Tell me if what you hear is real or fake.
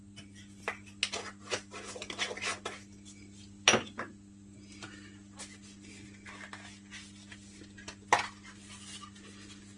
real